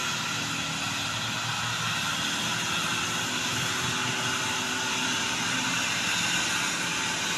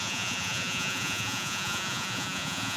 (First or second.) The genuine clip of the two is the first